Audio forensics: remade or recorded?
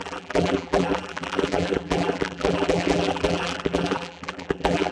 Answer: remade